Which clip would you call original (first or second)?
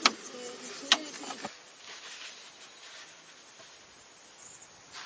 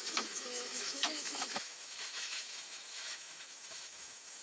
first